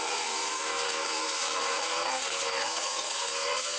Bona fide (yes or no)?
no